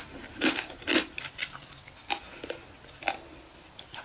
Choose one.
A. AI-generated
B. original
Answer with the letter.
B